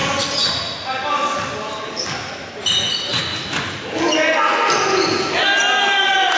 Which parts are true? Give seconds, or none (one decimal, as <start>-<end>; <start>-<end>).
0.0-3.1; 3.7-6.4